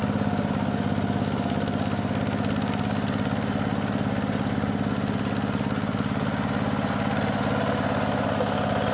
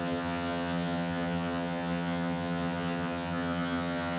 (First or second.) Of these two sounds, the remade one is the second